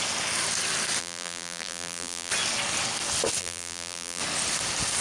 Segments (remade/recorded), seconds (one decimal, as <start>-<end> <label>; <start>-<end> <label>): 0.0-1.0 recorded; 1.0-2.3 remade; 2.3-3.4 recorded; 3.4-4.2 remade; 4.2-5.0 recorded